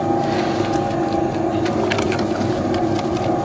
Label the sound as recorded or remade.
recorded